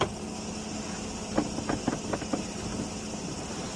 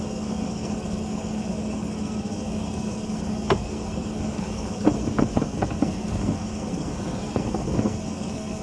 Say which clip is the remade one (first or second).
second